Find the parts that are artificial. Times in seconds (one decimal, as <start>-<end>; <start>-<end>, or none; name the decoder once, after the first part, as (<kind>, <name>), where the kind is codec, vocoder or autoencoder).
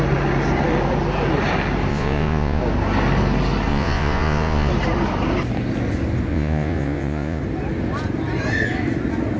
1.9-2.6 (vocoder, Vocos); 3.7-4.7; 6.3-7.4